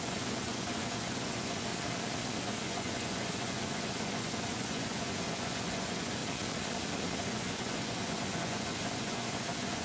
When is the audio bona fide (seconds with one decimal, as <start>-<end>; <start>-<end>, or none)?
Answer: 1.7-2.4; 6.2-7.2